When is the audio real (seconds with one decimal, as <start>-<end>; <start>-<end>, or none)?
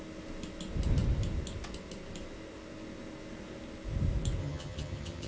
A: 0.0-4.4